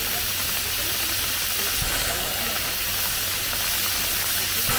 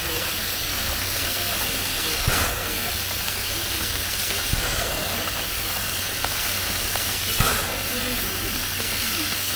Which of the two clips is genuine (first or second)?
first